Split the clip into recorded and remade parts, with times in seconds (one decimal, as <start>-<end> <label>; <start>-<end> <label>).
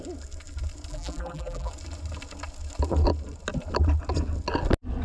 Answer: 0.0-0.9 recorded; 0.9-1.7 remade; 1.7-5.0 recorded